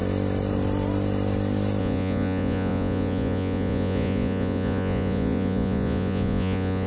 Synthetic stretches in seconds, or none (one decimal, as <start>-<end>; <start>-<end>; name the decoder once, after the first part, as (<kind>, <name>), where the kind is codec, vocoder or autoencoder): 1.8-6.9 (vocoder, Vocos)